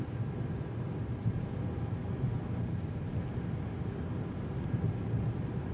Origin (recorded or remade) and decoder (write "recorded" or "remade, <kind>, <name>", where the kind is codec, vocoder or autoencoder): recorded